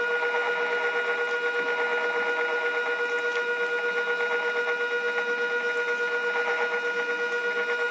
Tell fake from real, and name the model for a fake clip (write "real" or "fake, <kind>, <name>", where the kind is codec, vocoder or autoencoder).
real